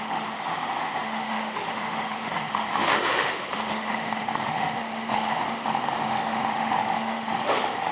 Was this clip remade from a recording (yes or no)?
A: yes